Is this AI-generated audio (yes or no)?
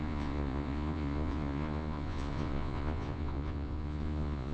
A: yes